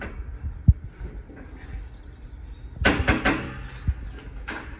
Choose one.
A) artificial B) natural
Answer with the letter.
B